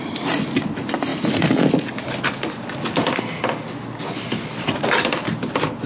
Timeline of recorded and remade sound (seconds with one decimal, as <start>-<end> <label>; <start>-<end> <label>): 0.0-5.9 recorded